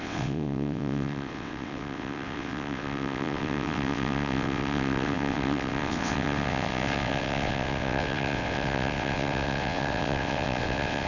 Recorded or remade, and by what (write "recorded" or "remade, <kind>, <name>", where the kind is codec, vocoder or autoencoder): remade, vocoder, WaveNeXt